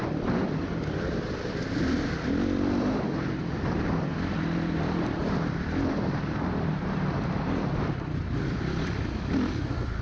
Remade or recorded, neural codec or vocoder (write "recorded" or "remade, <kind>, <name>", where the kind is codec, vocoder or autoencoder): remade, vocoder, BigVGAN v2